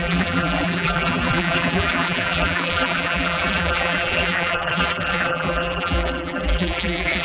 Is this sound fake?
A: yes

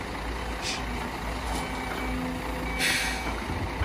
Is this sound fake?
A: no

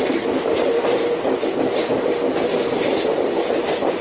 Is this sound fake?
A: no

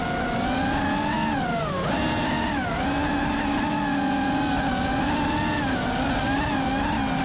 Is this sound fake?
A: no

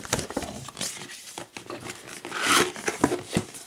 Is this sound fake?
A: yes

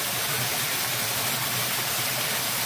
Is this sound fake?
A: yes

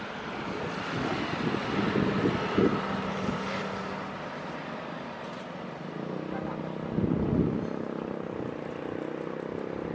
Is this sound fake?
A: no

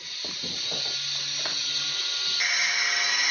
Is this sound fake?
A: no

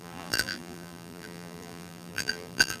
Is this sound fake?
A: yes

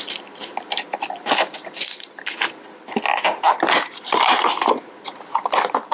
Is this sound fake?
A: no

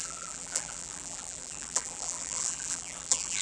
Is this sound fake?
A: yes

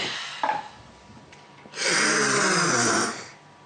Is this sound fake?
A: yes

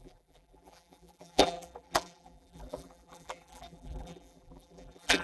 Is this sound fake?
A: yes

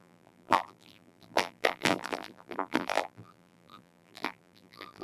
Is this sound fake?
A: yes